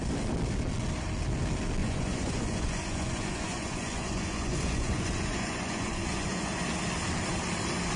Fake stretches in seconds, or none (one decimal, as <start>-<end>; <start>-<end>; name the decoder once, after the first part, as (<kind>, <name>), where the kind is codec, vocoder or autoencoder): 1.8-6.6 (vocoder, Vocos)